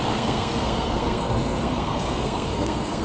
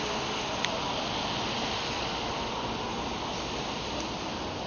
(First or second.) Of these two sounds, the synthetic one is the first